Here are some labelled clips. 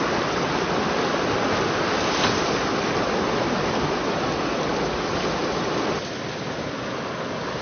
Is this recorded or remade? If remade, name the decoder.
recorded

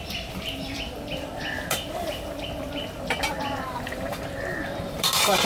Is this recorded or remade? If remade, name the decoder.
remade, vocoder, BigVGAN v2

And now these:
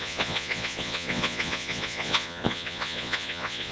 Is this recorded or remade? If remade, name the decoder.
remade, vocoder, Vocos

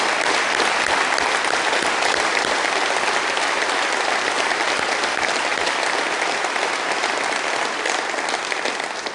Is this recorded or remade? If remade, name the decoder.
remade, vocoder, BigVGAN v2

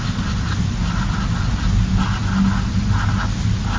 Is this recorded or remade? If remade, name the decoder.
recorded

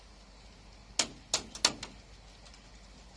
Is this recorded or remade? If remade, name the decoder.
recorded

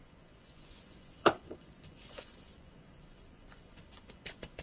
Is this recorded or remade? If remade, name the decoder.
remade, vocoder, Vocos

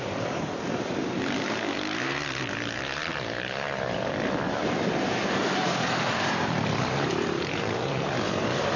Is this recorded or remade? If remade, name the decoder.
remade, vocoder, BigVGAN v2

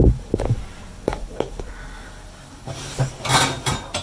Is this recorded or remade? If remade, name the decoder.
recorded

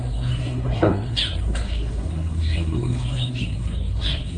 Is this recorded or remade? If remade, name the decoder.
remade, codec, SNAC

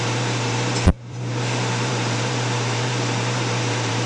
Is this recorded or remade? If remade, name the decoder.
remade, vocoder, BigVGAN v2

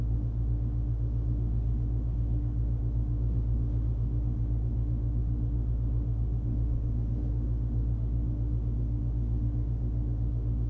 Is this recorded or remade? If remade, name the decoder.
remade, autoencoder, DAC-VAE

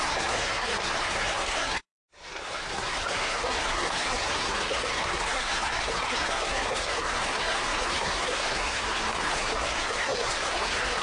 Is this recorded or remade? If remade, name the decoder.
remade, codec, SNAC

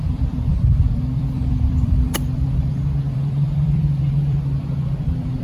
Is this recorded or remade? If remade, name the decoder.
remade, vocoder, BigVGAN v2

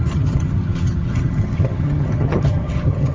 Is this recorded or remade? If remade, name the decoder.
remade, vocoder, HiFi-GAN